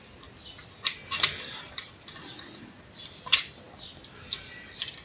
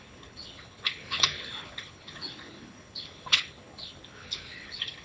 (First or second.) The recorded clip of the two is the first